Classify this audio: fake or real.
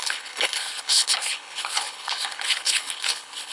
fake